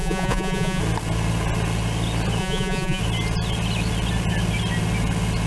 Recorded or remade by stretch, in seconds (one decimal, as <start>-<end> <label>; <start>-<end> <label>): 0.0-0.8 remade; 0.8-2.4 recorded; 2.4-3.0 remade; 3.0-5.5 recorded